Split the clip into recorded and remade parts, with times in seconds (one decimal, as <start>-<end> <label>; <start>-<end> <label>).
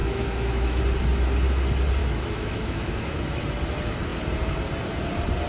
0.0-0.8 remade; 0.8-2.0 recorded; 2.0-3.4 remade; 3.4-5.5 recorded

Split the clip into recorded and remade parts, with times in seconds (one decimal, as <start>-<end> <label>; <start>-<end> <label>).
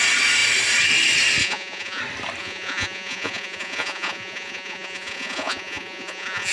0.0-1.4 recorded; 1.4-2.0 remade; 2.0-2.4 recorded; 2.4-6.5 remade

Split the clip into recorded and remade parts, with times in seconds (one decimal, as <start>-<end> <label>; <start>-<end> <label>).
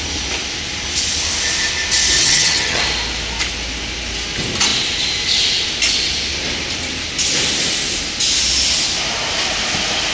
0.0-2.2 recorded; 2.2-2.8 remade; 2.8-10.1 recorded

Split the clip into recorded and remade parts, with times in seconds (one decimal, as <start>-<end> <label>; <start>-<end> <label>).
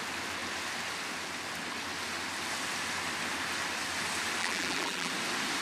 0.0-4.4 recorded; 4.4-5.1 remade; 5.1-5.6 recorded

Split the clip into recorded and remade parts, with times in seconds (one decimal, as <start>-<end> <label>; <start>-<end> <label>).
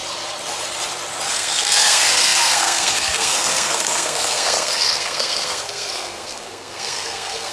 0.0-1.3 recorded; 1.3-7.5 remade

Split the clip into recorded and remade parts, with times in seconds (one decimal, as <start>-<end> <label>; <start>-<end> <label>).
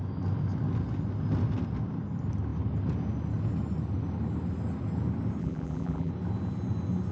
0.0-5.4 recorded; 5.4-6.1 remade; 6.1-7.1 recorded